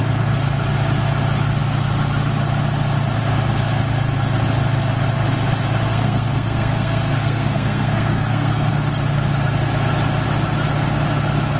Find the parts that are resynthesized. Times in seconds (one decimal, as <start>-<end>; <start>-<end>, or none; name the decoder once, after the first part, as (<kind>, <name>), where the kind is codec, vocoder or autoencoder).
5.9-8.7 (codec, SNAC)